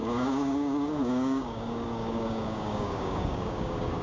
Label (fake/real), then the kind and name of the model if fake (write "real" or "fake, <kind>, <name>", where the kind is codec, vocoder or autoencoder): fake, codec, DAC